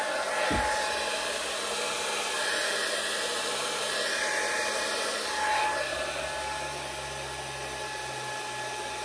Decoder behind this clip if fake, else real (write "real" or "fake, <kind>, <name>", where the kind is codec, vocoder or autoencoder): real